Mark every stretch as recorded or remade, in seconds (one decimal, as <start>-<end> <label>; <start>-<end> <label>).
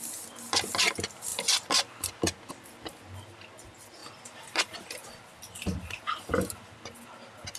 0.0-7.6 recorded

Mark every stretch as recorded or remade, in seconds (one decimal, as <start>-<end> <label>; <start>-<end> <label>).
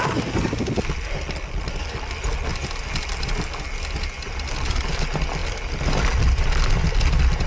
0.0-7.5 recorded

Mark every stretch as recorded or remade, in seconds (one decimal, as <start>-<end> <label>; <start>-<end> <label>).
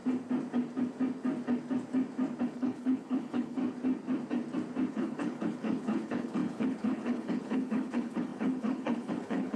0.0-2.4 recorded; 2.4-3.6 remade; 3.6-4.9 recorded; 4.9-9.6 remade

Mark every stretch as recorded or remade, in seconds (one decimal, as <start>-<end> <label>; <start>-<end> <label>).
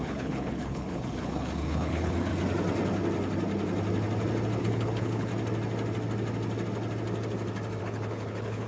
0.0-2.3 remade; 2.3-4.6 recorded; 4.6-5.3 remade; 5.3-7.8 recorded; 7.8-8.7 remade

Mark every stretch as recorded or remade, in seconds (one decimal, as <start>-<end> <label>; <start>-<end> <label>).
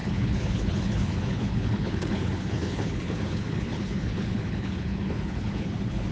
0.0-6.1 remade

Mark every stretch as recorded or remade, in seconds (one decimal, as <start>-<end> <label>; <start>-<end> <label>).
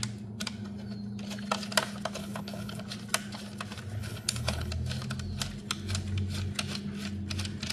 0.0-2.2 recorded; 2.2-2.8 remade; 2.8-4.0 recorded; 4.0-4.7 remade; 4.7-7.7 recorded